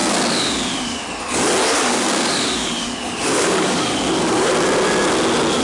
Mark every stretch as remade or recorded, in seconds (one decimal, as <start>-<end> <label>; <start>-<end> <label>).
0.0-1.8 recorded; 1.8-4.5 remade; 4.5-5.6 recorded